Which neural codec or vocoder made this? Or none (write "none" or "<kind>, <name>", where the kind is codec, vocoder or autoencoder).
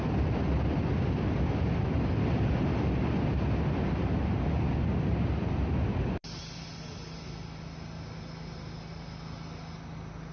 none